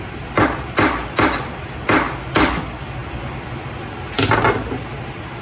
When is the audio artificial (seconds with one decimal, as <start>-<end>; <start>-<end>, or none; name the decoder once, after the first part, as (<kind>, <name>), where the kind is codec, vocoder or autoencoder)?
none